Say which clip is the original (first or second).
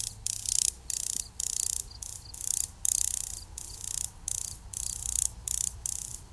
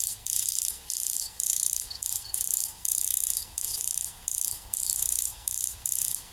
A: first